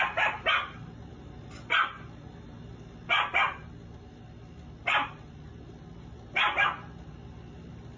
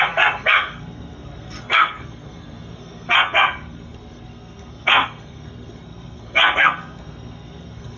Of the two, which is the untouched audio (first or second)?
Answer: first